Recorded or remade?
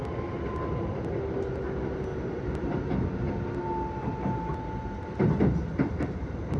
recorded